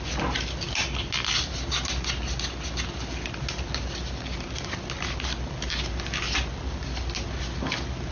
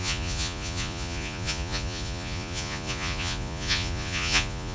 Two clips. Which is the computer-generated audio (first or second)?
second